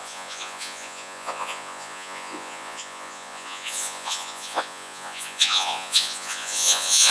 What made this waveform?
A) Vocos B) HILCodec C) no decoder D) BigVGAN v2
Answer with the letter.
A